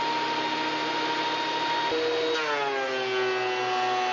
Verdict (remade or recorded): recorded